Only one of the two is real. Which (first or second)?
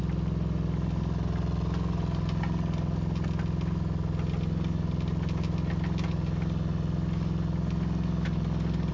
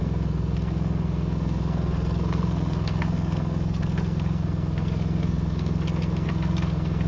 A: first